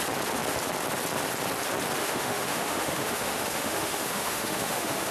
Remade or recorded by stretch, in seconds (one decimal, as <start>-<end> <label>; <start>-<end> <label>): 0.0-2.0 recorded; 2.0-5.1 remade